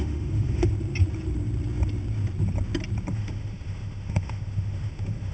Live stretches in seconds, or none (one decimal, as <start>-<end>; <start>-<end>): 0.7-3.1